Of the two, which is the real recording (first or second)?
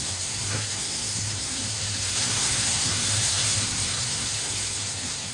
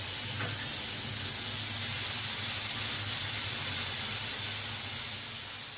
second